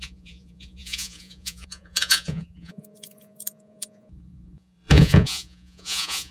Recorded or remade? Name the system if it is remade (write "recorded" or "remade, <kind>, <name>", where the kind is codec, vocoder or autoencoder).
remade, vocoder, Vocos